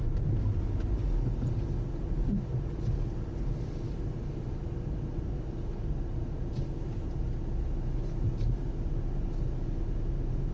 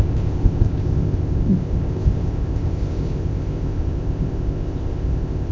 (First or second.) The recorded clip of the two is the first